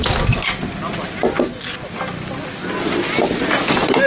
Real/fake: real